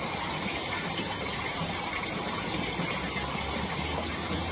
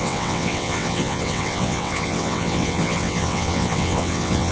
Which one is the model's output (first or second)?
second